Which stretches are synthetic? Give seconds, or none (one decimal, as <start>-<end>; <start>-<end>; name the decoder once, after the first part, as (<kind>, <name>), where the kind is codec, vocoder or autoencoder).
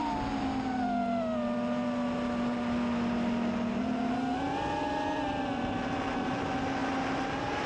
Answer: none